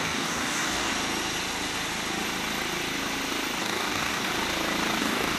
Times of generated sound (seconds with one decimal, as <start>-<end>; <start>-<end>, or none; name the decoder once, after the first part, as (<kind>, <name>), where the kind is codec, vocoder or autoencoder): 0.0-0.9 (codec, DAC); 3.6-4.3; 5.0-5.4